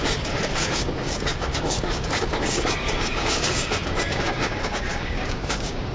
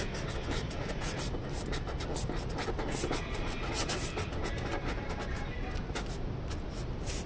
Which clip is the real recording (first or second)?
second